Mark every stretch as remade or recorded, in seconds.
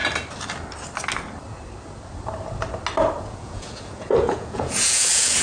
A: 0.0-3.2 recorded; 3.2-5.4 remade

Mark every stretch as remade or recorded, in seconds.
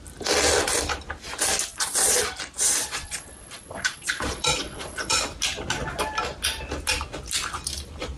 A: 0.0-1.7 recorded; 1.7-2.2 remade; 2.2-2.8 recorded; 2.8-5.2 remade; 5.2-8.2 recorded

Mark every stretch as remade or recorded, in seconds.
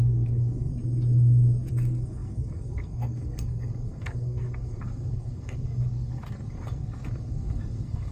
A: 0.0-0.7 remade; 0.7-1.7 recorded; 1.7-8.1 remade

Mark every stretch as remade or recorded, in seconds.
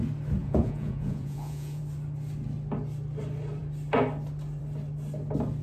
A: 0.0-0.4 recorded; 0.4-1.8 remade; 1.8-5.6 recorded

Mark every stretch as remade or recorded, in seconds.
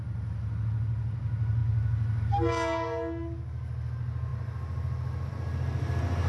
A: 0.0-6.3 recorded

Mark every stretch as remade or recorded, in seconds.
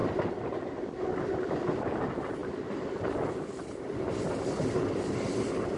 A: 0.0-5.8 recorded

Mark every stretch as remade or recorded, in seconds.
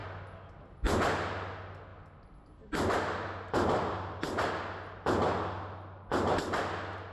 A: 0.0-1.9 recorded; 1.9-4.5 remade; 4.5-7.1 recorded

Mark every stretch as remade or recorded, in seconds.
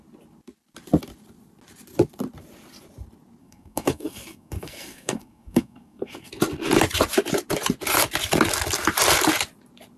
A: 0.0-3.4 recorded; 3.4-6.3 remade; 6.3-10.0 recorded